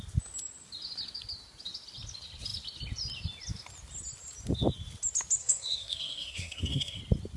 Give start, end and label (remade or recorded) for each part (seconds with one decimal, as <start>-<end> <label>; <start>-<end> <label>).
0.0-5.4 recorded; 5.4-7.0 remade; 7.0-7.4 recorded